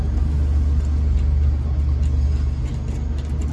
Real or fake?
real